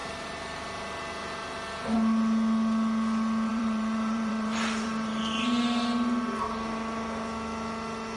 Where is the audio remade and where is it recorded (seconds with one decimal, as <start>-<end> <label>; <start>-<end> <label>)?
0.0-3.5 recorded; 3.5-5.2 remade; 5.2-8.2 recorded